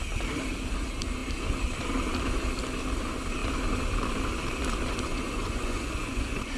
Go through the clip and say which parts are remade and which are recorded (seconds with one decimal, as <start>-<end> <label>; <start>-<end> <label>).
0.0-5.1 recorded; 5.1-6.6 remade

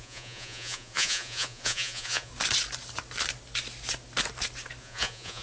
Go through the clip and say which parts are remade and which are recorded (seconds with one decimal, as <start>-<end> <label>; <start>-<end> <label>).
0.0-2.3 remade; 2.3-4.8 recorded; 4.8-5.4 remade

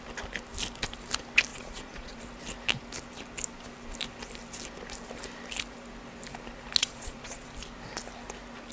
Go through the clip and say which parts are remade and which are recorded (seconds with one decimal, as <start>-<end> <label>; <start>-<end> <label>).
0.0-1.5 recorded; 1.5-2.2 remade; 2.2-6.8 recorded; 6.8-7.5 remade; 7.5-8.7 recorded

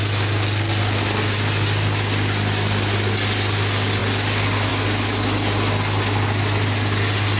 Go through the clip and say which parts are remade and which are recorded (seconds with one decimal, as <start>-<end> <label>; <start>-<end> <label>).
0.0-7.4 recorded